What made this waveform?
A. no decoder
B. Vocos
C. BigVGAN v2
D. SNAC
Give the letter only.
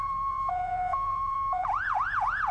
B